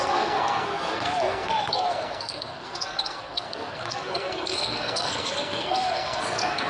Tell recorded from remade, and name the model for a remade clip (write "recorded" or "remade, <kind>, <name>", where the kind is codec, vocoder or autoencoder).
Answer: remade, codec, SNAC